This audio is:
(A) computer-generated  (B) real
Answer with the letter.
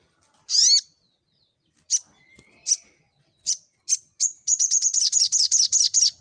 B